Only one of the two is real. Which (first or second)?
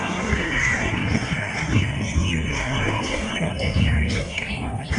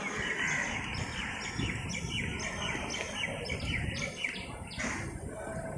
second